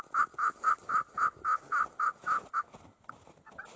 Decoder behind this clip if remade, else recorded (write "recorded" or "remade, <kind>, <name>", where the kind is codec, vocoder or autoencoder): recorded